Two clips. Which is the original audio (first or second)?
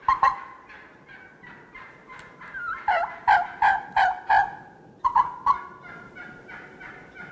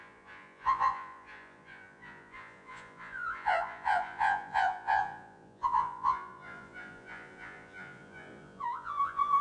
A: first